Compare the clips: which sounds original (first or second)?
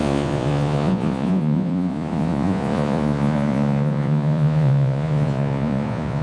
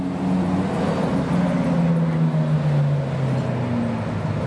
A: second